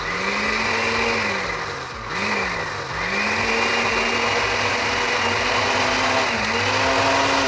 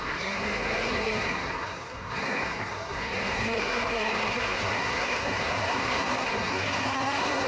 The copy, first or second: second